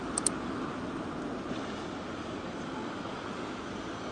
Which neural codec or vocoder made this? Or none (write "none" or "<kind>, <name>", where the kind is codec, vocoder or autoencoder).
none